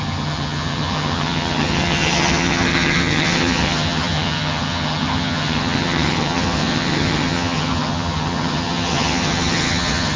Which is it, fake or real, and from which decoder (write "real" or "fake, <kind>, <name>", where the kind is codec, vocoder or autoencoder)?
fake, vocoder, HiFi-GAN